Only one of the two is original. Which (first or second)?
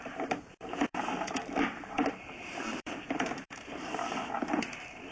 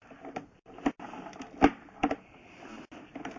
second